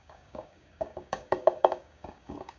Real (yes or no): no